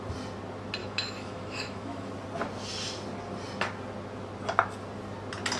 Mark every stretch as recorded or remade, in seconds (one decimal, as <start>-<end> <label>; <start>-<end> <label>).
0.0-0.8 recorded; 0.8-2.1 remade; 2.1-5.6 recorded